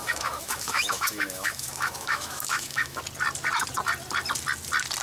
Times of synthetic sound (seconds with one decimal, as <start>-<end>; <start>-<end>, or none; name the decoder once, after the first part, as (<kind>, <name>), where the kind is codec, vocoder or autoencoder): 0.0-3.0 (autoencoder, DAC-VAE)